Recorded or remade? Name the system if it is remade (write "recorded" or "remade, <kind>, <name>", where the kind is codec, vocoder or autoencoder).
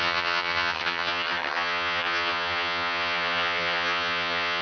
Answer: remade, vocoder, HiFi-GAN